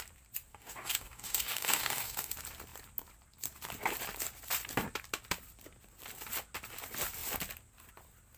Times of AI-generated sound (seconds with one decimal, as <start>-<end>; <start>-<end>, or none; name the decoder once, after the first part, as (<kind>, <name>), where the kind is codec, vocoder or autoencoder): 0.5-2.3 (codec, DAC)